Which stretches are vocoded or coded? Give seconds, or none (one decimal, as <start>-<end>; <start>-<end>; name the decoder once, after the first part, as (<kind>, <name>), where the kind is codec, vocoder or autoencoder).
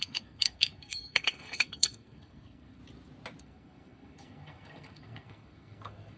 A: 0.0-2.8 (codec, SNAC); 3.4-6.2